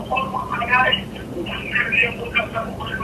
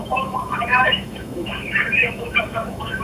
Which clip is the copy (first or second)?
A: second